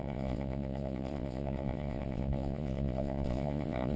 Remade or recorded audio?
remade